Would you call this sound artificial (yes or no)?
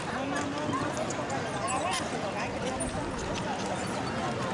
no